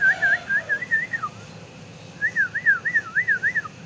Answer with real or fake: real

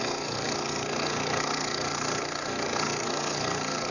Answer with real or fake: fake